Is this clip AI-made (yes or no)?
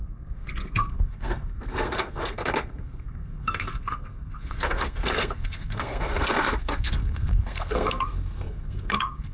yes